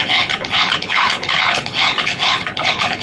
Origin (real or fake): fake